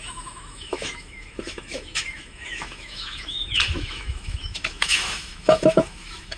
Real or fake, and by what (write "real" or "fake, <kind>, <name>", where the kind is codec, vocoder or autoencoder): fake, autoencoder, DAC-VAE